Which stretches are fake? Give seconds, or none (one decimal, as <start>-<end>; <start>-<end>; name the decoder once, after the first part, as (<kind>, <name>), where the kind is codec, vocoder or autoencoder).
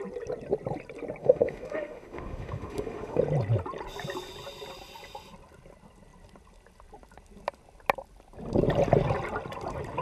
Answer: 1.2-3.2 (autoencoder, DAC-VAE)